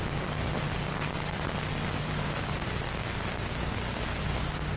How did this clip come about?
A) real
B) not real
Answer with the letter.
A